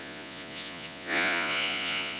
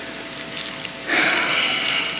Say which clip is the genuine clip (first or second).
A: second